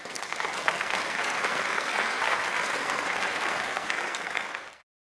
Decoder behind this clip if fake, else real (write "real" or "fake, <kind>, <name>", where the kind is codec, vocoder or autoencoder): fake, codec, SNAC